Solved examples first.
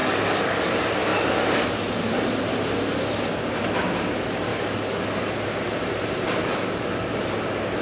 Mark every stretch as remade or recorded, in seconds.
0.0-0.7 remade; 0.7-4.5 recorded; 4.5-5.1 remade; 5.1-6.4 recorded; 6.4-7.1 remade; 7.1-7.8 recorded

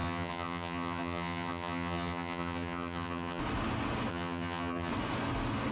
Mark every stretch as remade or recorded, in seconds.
0.0-3.4 remade; 3.4-4.1 recorded; 4.1-4.9 remade; 4.9-5.7 recorded

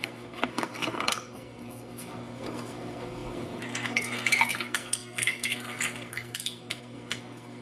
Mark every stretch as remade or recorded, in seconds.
0.0-7.6 remade